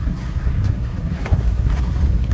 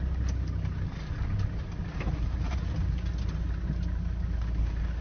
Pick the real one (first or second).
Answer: second